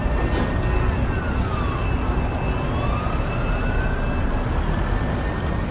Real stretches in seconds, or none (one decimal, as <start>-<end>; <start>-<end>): 0.0-5.7

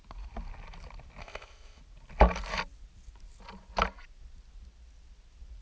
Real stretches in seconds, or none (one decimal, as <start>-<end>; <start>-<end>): 0.0-1.2; 1.8-5.6

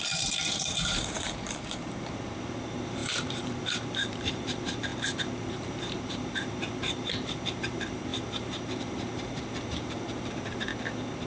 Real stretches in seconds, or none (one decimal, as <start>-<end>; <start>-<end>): 10.7-11.3

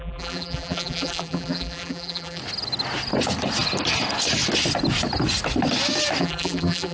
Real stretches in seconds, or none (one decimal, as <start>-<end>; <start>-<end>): 2.4-6.2

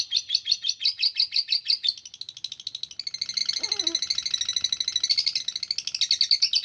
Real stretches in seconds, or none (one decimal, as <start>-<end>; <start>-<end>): 0.0-6.6

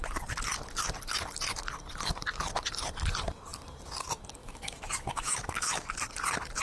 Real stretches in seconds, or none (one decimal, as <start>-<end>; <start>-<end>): 0.0-4.4; 5.9-6.6

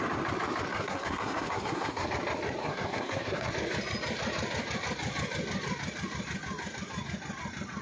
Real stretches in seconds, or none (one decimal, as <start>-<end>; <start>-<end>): 0.0-0.7; 2.1-2.6; 3.5-7.8

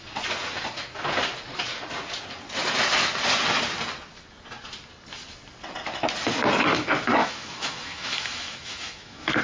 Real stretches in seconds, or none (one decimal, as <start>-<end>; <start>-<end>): 0.0-7.2